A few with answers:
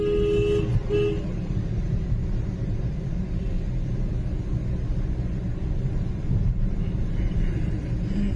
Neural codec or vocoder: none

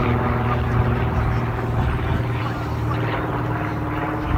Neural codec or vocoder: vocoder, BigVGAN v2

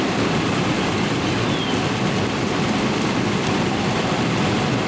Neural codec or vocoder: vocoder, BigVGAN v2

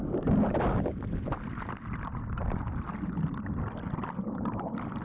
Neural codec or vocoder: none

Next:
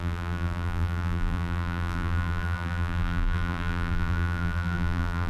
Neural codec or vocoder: vocoder, BigVGAN v2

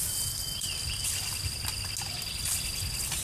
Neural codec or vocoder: none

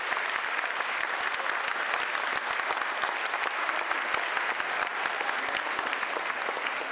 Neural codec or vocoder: none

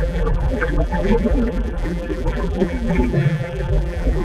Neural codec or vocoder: vocoder, BigVGAN v2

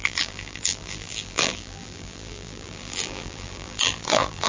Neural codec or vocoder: vocoder, BigVGAN v2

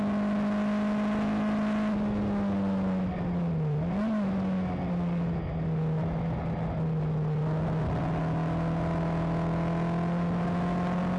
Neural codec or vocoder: none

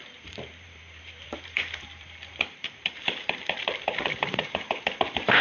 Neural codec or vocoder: vocoder, BigVGAN v2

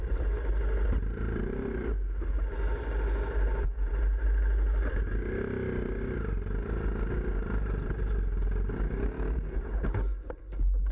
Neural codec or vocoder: none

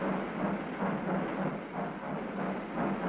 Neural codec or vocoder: none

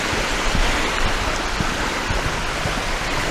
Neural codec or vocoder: none